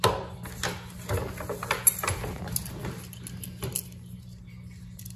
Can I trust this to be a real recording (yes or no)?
yes